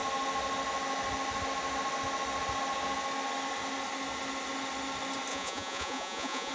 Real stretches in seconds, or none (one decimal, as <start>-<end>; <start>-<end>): 0.0-5.3